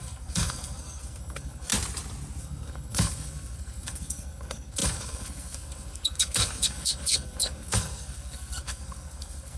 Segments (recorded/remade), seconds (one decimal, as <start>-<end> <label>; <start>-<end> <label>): 0.0-1.7 remade; 1.7-2.4 recorded; 2.4-9.6 remade